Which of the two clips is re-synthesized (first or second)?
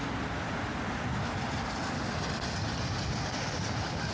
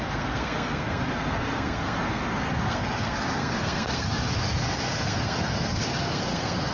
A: second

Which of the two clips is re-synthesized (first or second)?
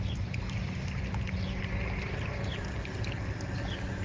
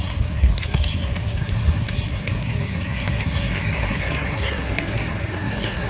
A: second